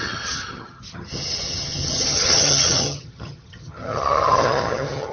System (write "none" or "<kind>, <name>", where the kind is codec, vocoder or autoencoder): vocoder, HiFi-GAN